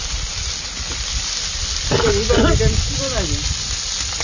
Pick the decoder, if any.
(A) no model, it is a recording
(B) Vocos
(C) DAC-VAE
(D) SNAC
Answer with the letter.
A